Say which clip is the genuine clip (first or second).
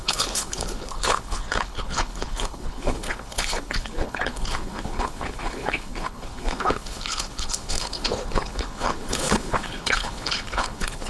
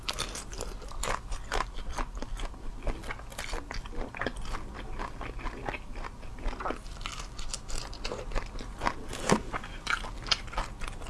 second